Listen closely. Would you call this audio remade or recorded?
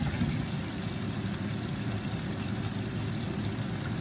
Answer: recorded